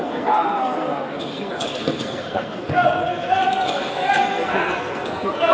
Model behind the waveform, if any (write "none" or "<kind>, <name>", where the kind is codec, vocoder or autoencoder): codec, SNAC